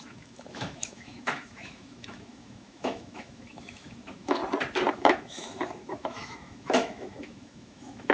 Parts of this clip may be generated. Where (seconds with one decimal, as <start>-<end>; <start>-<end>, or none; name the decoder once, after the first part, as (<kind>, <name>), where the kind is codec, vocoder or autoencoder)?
0.0-4.4 (autoencoder, DAC-VAE); 4.9-8.1